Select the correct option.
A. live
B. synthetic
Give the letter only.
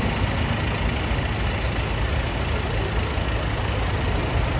A